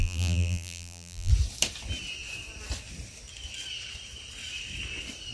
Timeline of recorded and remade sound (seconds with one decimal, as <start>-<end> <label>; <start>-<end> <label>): 0.0-1.3 remade; 1.3-5.3 recorded